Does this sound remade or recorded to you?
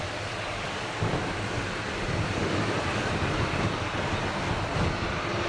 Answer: recorded